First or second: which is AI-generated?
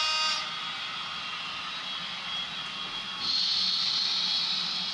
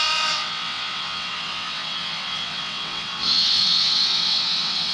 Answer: second